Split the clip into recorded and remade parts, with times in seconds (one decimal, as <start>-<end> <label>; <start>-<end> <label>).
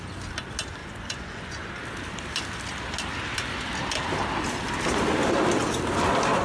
0.0-0.8 recorded; 0.8-1.7 remade; 1.7-6.4 recorded